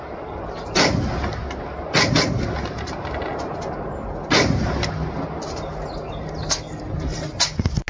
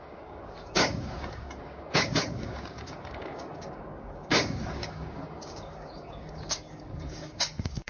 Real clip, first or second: first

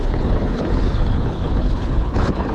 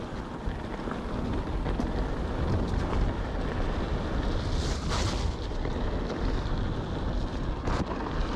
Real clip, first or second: second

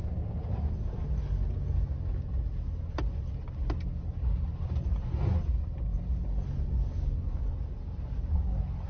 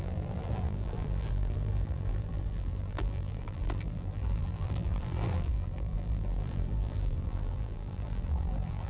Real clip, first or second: first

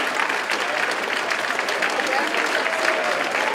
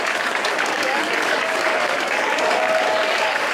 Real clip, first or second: first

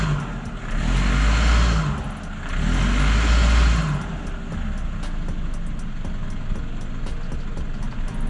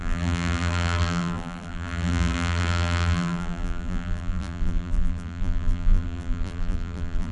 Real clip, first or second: first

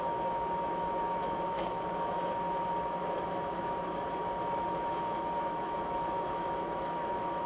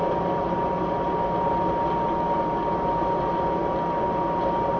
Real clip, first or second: second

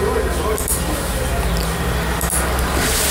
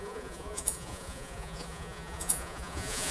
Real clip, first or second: first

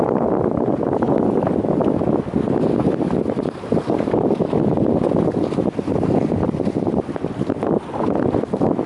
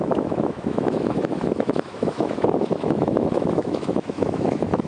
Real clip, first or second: first